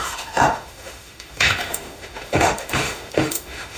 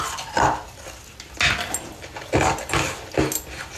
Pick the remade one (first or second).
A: first